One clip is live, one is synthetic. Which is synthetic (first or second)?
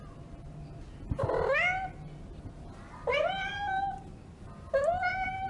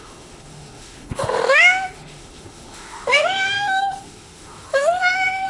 second